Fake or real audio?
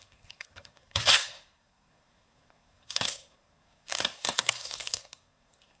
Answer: fake